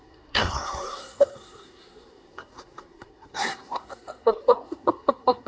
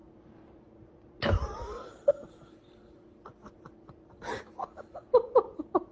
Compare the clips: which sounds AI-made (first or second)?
first